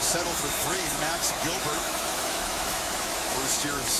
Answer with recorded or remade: remade